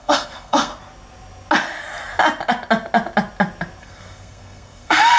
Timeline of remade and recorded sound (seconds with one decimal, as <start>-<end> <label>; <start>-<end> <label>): 0.0-0.7 remade; 0.7-3.8 recorded; 3.8-5.2 remade